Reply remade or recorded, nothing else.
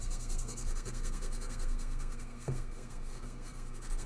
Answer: remade